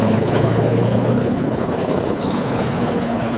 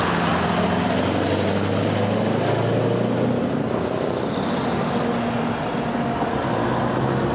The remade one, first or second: first